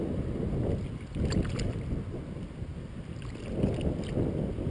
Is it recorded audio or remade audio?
recorded